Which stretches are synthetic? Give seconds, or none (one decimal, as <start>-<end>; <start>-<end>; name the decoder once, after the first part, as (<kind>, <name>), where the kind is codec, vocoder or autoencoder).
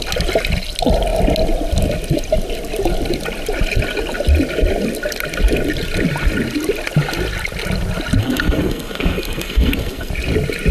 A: 8.2-10.1 (codec, SNAC)